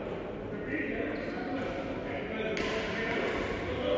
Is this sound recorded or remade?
recorded